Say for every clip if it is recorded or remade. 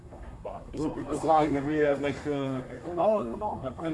remade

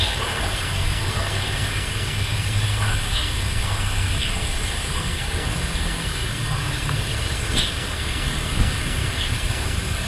remade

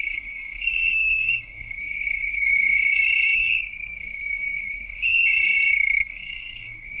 remade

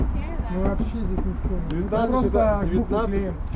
recorded